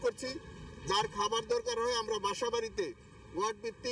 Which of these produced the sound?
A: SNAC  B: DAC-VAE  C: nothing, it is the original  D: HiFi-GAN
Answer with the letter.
C